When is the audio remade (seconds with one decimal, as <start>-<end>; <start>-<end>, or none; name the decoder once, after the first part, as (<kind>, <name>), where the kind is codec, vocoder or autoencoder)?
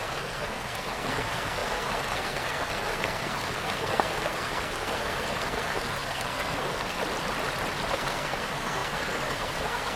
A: 0.0-7.0 (codec, SNAC); 7.9-10.0